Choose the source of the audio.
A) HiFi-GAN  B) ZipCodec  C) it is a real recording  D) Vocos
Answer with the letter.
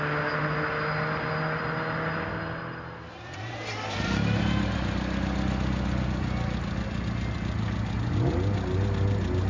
C